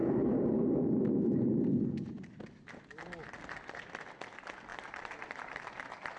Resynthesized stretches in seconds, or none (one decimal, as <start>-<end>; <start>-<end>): 0.0-1.5; 4.7-5.8